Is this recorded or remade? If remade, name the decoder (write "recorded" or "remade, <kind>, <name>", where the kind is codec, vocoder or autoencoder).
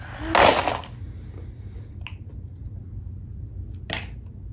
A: recorded